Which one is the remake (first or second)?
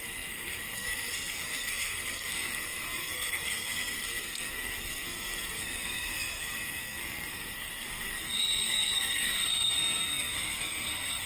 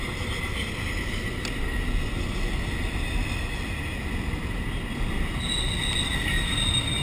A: first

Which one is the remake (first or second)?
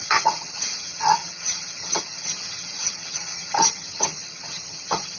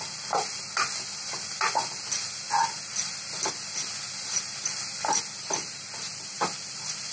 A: first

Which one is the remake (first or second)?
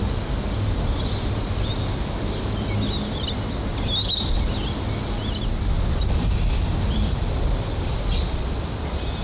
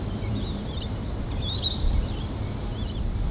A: second